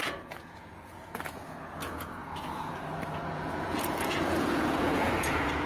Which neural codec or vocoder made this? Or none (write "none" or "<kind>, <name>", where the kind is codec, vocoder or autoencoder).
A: vocoder, Vocos